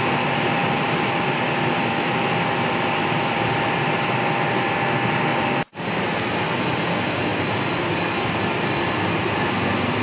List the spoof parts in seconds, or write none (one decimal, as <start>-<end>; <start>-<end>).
0.6-4.7; 5.3-6.2; 7.3-9.4